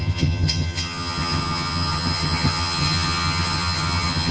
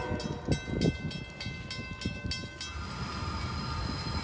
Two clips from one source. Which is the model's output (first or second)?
first